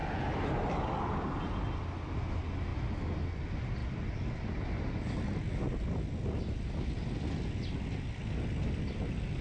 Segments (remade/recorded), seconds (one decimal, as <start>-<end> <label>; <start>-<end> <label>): 0.0-9.4 recorded